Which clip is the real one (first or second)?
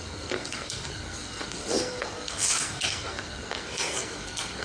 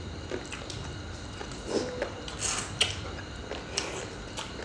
second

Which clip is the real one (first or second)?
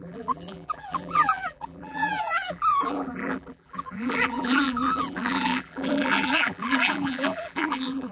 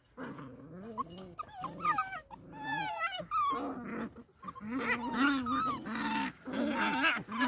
second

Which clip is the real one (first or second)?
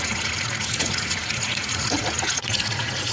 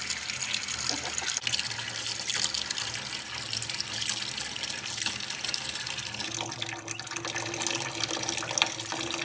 second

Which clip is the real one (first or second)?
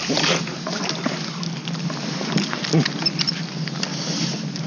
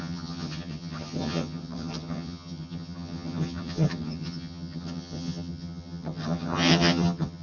first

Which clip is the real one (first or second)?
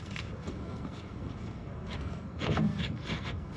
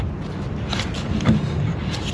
second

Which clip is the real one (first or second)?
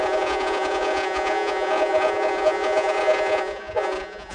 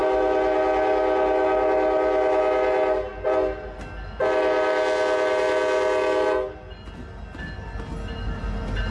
second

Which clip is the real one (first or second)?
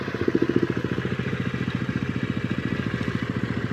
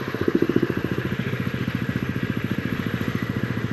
first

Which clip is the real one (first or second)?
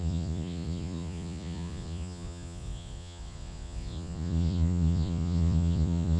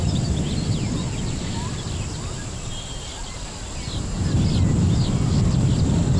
second